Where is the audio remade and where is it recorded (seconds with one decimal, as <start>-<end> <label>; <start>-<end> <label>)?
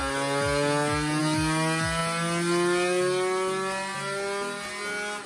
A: 0.0-5.3 recorded